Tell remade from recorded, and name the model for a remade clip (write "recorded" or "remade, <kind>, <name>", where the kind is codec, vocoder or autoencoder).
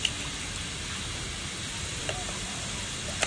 recorded